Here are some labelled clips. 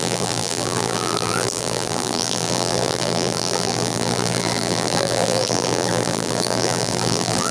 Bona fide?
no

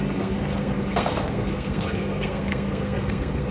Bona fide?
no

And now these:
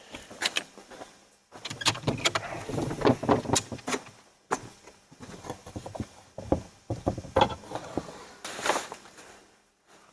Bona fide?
yes